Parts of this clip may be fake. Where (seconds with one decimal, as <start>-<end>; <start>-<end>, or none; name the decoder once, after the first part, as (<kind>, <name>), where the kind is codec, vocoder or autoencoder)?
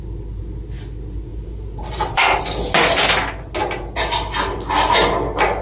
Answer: 1.3-2.4 (vocoder, BigVGAN v2); 3.6-4.1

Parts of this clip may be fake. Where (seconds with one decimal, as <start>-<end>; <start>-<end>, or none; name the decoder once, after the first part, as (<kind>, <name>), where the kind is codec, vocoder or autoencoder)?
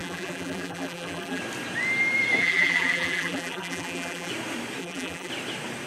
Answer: 0.0-1.4 (vocoder, BigVGAN v2); 2.4-4.3; 4.8-5.3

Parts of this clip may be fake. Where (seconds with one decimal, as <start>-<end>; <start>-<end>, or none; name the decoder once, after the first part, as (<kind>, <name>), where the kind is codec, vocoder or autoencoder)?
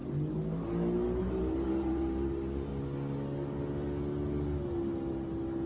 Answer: 1.2-2.7 (vocoder, BigVGAN v2)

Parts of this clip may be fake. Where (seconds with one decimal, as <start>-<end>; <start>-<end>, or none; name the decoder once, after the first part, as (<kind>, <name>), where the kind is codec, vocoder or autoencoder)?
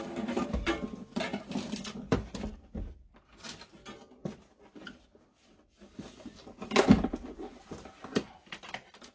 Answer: none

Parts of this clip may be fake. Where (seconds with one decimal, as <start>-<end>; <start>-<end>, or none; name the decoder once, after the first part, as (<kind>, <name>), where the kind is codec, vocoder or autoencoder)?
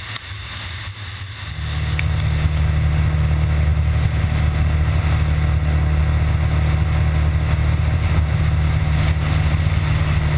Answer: 7.6-8.4 (vocoder, BigVGAN v2)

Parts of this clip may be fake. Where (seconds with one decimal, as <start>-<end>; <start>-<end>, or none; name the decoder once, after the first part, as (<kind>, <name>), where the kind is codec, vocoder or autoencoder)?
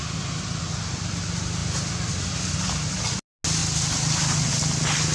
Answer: none